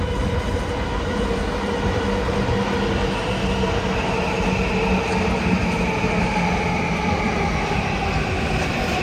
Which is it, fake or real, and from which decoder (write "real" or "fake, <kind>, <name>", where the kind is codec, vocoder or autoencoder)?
real